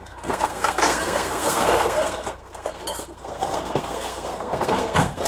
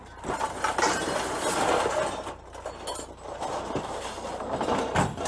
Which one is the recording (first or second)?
second